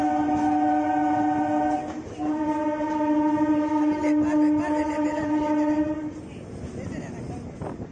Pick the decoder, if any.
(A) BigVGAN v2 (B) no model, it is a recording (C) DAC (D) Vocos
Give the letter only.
B